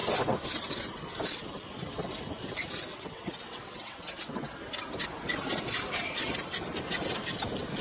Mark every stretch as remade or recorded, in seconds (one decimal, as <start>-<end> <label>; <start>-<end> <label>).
0.0-2.9 recorded; 2.9-4.5 remade; 4.5-7.8 recorded

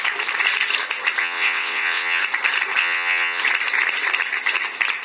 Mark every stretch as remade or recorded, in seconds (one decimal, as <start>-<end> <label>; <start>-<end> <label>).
0.0-1.2 recorded; 1.2-2.2 remade; 2.2-2.8 recorded; 2.8-3.4 remade; 3.4-5.0 recorded